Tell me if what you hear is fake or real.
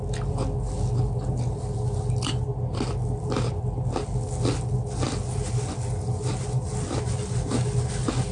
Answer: real